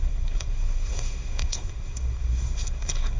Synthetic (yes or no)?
yes